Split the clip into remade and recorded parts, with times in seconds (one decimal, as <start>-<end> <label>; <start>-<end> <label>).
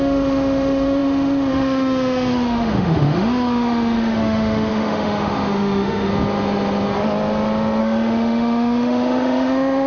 0.0-6.1 remade; 6.1-7.8 recorded; 7.8-9.9 remade